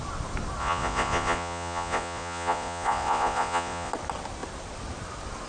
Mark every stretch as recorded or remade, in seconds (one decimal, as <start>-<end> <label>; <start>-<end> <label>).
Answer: 0.0-0.6 recorded; 0.6-3.9 remade; 3.9-5.5 recorded